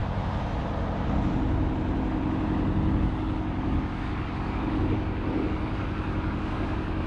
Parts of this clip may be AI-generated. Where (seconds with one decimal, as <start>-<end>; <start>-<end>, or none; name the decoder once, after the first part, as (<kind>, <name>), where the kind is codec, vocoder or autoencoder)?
2.9-7.1 (codec, DAC)